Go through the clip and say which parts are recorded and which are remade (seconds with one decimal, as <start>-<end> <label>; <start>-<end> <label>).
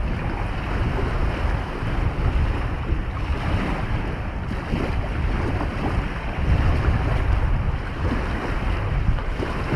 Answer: 0.0-5.7 recorded; 5.7-6.5 remade; 6.5-9.8 recorded